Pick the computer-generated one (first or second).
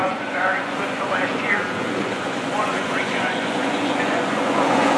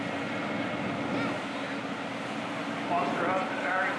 first